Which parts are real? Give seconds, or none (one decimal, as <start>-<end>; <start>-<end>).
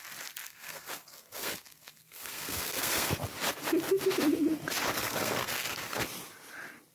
0.0-0.4; 3.1-4.9; 6.0-6.9